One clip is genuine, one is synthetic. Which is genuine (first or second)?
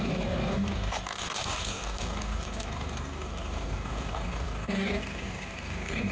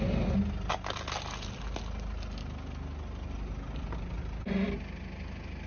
second